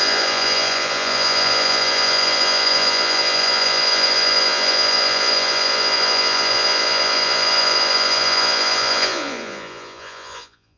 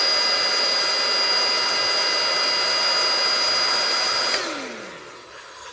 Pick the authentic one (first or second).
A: second